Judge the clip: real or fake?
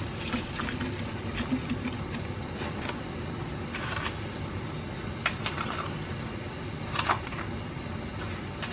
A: real